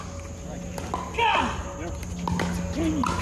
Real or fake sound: real